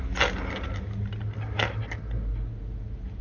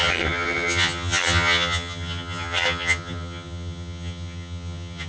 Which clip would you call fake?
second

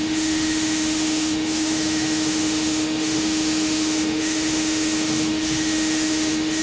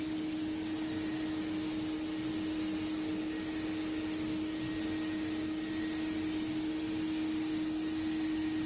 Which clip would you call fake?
first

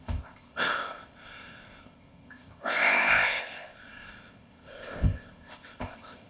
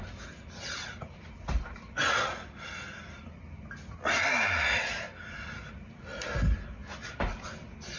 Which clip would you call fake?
first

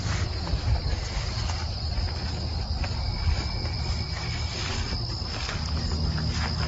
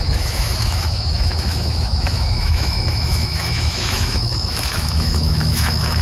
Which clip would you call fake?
second